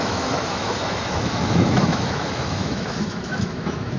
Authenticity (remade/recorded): remade